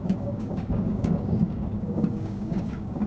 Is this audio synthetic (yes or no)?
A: yes